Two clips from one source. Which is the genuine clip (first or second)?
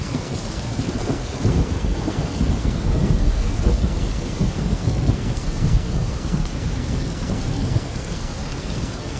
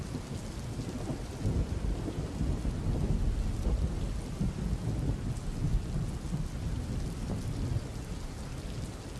second